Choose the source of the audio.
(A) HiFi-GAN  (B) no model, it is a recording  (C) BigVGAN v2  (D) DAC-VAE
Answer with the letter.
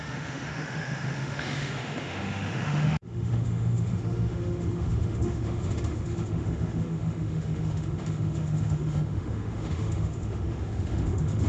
D